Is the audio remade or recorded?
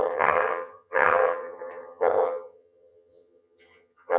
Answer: remade